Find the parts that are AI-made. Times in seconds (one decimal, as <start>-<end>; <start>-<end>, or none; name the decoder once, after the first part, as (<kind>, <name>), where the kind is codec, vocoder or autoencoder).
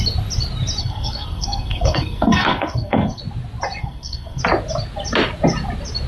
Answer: 0.8-3.2 (codec, SNAC); 3.8-4.4